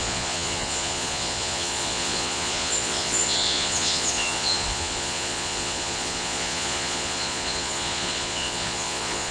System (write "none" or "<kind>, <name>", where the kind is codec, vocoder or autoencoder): vocoder, Vocos